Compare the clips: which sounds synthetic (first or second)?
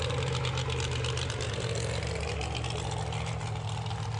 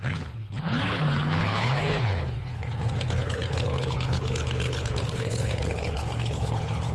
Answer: second